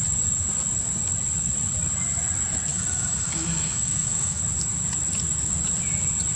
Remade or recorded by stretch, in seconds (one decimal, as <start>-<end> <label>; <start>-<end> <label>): 0.0-2.7 recorded; 2.7-4.4 remade; 4.4-6.4 recorded